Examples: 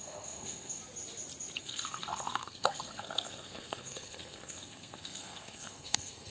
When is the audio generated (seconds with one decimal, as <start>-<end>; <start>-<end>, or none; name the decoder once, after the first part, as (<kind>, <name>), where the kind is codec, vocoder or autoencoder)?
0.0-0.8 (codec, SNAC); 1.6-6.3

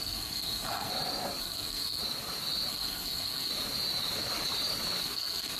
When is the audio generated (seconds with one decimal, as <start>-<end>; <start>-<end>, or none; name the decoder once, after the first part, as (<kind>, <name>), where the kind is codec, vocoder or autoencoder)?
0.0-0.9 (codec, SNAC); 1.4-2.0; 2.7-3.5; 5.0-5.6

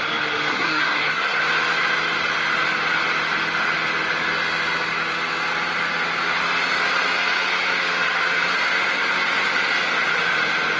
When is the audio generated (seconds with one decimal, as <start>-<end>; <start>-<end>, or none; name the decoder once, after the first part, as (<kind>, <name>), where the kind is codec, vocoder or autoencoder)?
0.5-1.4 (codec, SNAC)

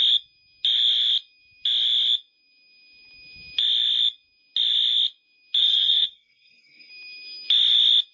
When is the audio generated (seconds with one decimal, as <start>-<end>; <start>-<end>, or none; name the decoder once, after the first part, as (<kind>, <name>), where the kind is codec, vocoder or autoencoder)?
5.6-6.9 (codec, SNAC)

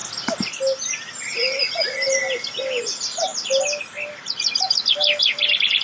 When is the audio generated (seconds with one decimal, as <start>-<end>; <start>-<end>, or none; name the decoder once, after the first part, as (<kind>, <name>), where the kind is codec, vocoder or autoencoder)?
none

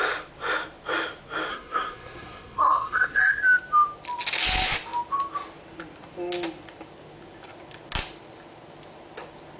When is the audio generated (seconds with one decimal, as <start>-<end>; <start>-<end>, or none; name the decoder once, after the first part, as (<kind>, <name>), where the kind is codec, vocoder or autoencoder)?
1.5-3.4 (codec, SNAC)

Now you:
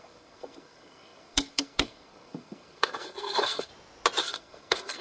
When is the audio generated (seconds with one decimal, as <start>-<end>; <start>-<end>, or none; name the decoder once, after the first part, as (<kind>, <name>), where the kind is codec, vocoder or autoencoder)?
0.0-3.7 (codec, SNAC); 4.2-5.0